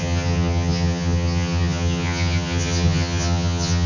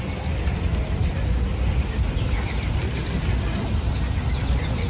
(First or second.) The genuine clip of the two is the second